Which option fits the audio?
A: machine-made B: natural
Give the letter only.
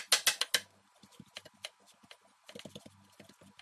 B